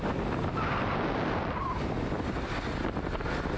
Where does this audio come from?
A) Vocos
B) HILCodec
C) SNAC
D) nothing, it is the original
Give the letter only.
D